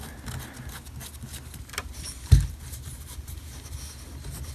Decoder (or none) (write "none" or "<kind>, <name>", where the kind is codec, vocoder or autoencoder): none